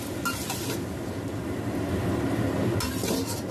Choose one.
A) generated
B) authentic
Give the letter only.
B